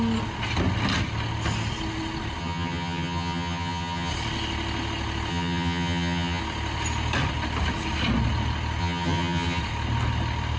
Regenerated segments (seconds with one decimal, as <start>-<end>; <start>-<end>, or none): 2.4-4.1; 5.3-6.4; 8.8-9.6